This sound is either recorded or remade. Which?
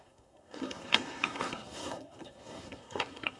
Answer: remade